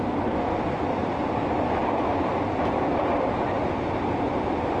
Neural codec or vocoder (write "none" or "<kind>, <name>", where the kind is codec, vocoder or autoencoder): none